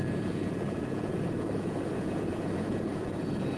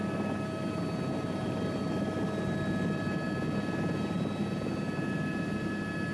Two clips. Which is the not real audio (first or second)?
first